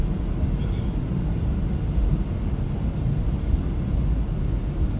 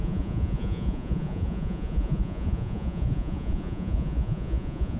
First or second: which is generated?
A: second